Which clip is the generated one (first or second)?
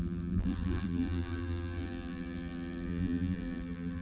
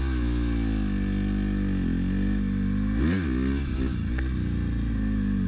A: first